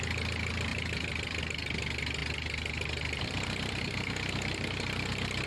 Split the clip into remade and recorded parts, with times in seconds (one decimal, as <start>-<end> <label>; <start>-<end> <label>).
0.0-0.7 recorded; 0.7-1.4 remade; 1.4-2.2 recorded; 2.2-3.8 remade; 3.8-5.5 recorded